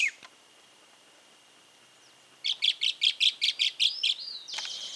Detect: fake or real real